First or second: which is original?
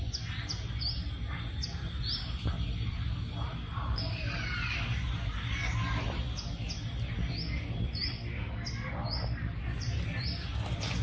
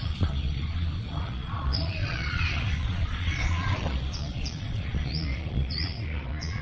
first